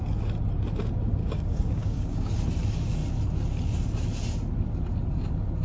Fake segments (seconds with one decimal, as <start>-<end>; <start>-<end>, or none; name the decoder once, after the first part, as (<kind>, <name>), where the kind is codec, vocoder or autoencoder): 1.2-2.3 (codec, DAC)